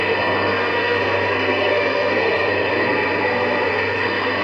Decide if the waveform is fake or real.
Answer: fake